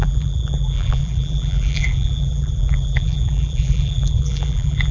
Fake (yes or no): yes